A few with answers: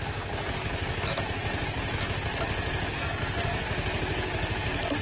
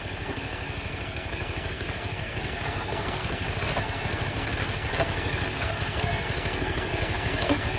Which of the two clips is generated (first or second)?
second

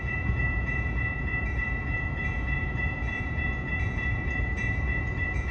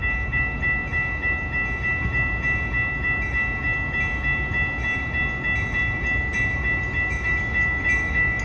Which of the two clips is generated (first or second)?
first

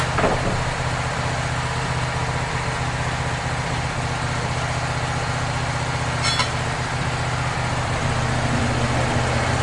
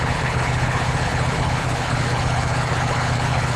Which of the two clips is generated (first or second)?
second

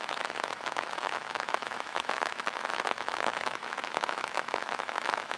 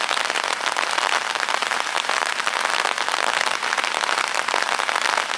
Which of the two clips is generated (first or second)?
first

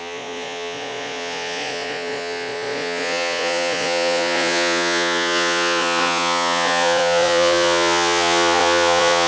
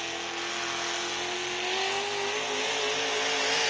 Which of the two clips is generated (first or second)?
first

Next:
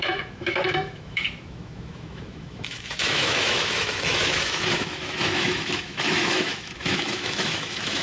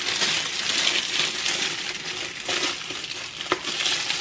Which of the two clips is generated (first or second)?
first